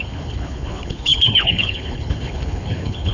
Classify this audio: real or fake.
fake